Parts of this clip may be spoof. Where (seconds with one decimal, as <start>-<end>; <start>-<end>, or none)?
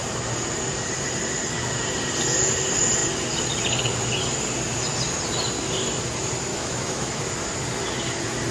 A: 6.5-7.2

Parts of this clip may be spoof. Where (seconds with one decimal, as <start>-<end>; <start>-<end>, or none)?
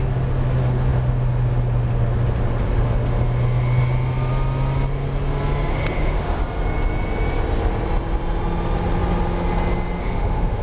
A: 5.7-6.4; 10.0-10.6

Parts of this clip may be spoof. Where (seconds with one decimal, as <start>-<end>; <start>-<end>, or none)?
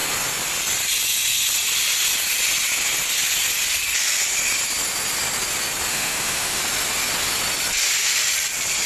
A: 5.9-6.6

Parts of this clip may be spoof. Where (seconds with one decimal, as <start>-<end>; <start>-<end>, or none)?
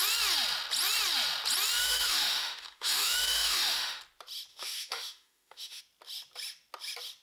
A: 1.8-4.0; 4.5-5.8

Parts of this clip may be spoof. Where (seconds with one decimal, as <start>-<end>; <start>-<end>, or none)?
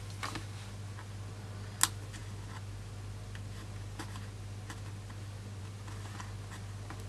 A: none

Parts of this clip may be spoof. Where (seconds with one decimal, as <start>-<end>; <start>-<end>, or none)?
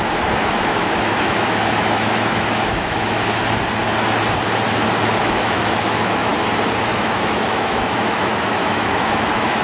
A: 0.4-3.4; 5.2-6.3; 6.9-9.6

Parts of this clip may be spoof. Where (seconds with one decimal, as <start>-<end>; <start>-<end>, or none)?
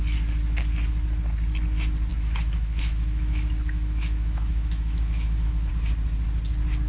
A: 2.1-5.7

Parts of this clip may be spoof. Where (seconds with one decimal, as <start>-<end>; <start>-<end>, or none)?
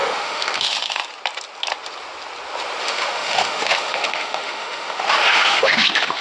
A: 0.0-1.0; 2.8-6.2